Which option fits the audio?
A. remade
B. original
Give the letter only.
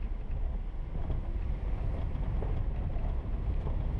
B